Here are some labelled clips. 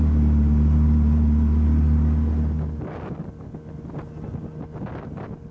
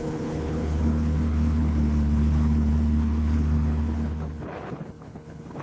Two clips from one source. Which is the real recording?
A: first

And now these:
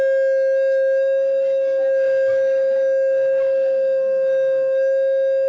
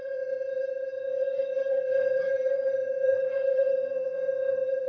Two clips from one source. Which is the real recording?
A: first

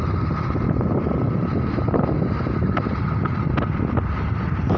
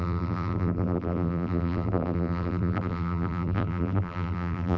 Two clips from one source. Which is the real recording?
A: first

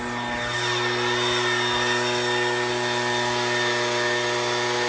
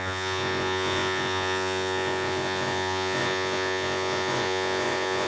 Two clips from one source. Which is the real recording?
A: first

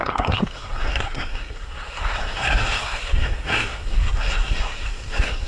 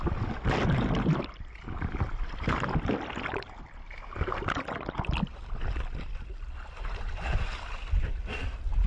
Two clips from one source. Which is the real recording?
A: second